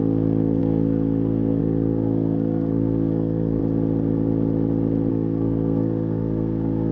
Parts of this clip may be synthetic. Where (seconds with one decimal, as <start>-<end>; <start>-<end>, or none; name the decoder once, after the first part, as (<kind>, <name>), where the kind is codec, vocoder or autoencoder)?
0.0-3.6 (codec, SNAC); 5.1-6.9